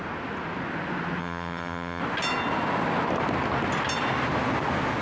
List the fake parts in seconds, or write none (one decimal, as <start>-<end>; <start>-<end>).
1.2-2.0